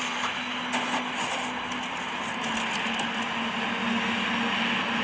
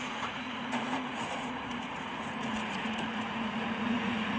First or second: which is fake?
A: second